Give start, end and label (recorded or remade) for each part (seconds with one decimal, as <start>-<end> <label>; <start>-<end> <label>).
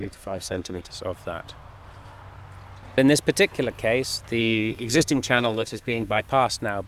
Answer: 0.0-0.9 remade; 0.9-4.4 recorded; 4.4-6.2 remade; 6.2-6.9 recorded